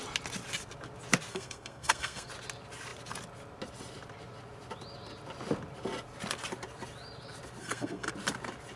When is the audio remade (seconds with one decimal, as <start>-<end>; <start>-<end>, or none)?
1.3-2.3; 7.6-8.1